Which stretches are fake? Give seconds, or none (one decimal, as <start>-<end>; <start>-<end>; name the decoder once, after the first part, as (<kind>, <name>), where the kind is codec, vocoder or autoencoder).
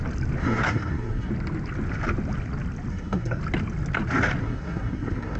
0.4-1.3 (codec, SNAC); 2.9-3.4; 4.4-5.4